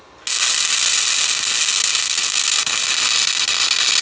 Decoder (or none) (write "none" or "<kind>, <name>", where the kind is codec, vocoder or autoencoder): none